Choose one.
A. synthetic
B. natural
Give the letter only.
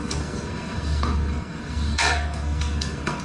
A